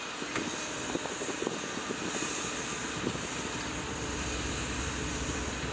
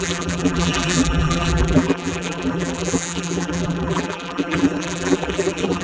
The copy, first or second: second